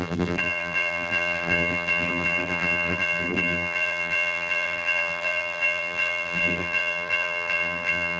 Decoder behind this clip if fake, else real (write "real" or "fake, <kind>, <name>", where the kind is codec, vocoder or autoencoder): fake, vocoder, BigVGAN v2